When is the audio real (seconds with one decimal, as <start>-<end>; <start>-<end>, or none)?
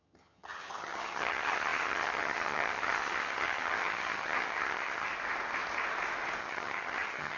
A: 5.1-6.4